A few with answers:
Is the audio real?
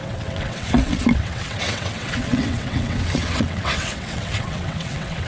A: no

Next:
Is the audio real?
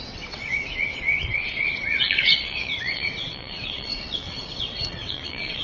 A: no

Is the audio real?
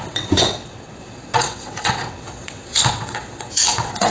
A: no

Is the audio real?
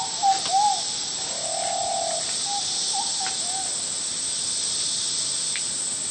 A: yes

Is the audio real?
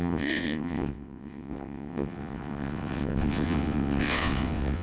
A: no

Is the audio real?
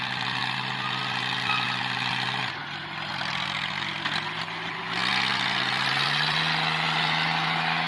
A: yes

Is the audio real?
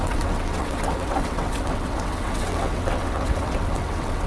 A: no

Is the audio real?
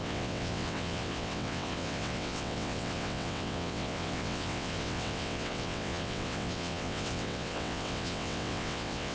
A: no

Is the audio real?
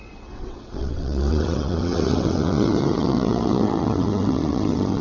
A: no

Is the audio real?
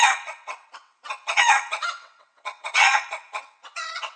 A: no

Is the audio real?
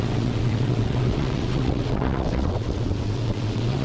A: no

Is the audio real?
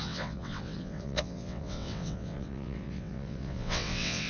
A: no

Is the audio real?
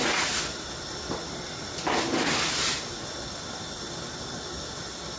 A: yes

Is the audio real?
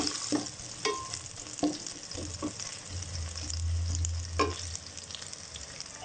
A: yes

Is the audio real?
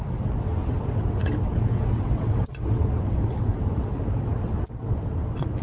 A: no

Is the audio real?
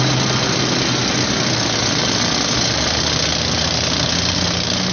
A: yes